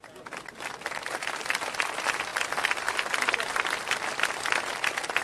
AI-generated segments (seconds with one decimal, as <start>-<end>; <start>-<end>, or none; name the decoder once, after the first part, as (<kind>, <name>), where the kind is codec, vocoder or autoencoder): none